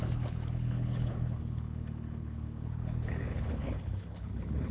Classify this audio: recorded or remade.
remade